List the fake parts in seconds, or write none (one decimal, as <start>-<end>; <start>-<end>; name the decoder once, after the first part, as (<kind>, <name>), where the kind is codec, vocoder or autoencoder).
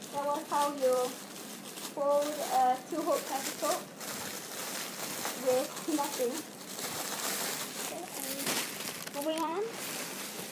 0.0-1.8 (vocoder, BigVGAN v2); 3.6-10.5